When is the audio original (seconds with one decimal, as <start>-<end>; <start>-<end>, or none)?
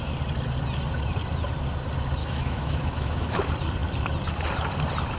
0.0-2.2; 3.4-5.2